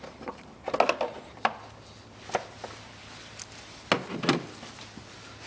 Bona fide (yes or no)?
yes